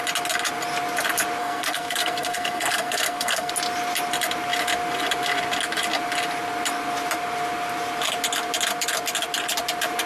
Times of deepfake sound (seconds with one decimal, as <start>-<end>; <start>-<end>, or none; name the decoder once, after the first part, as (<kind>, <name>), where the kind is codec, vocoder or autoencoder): 1.4-3.5 (codec, SNAC)